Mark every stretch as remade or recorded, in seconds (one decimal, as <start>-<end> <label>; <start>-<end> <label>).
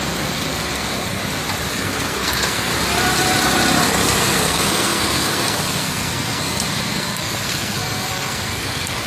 0.0-1.2 remade; 1.2-1.7 recorded; 1.7-2.7 remade; 2.7-3.8 recorded; 3.8-9.1 remade